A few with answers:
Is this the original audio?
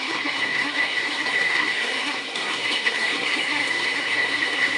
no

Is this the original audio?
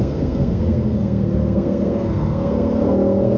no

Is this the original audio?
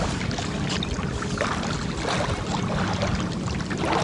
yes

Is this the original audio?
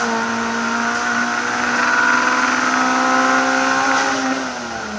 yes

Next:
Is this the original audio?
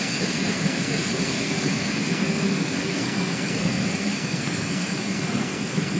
no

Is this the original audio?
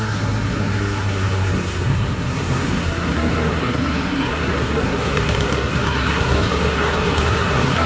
no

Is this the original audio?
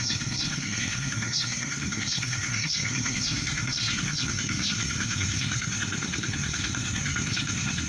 no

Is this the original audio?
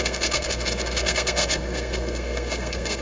no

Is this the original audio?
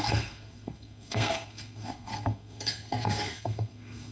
no